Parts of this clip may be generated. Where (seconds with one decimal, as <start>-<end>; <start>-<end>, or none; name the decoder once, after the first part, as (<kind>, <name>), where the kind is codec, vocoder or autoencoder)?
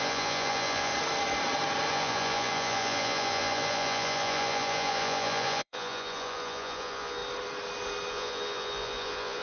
0.0-0.9 (vocoder, Vocos); 1.9-7.2; 8.1-9.4